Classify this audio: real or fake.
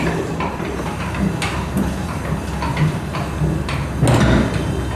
real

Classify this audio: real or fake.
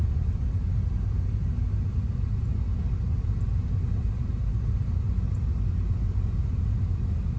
real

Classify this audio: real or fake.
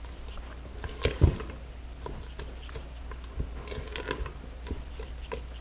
real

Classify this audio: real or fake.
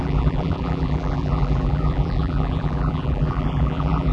fake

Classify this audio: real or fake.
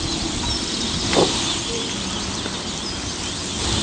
real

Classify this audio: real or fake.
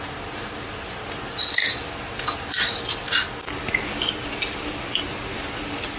real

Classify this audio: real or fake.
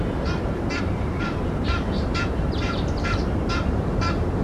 fake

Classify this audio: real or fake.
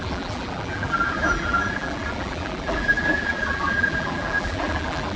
fake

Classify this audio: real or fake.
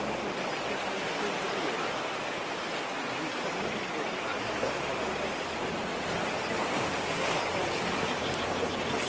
real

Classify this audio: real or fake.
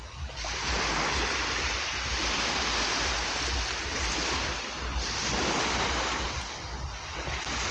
real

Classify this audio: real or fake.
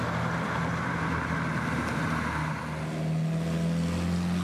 real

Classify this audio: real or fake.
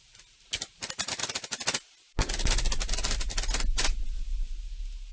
real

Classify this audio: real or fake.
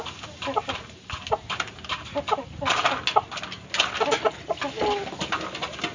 real